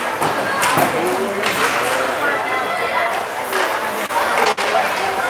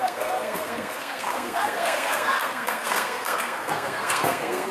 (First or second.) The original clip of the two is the first